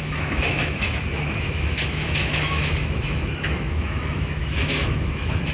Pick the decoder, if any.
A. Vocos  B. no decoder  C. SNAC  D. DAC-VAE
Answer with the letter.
D